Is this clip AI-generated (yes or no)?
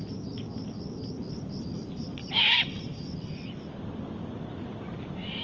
no